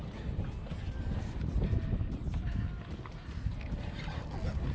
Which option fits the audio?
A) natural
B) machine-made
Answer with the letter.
A